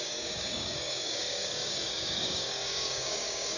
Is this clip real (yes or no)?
no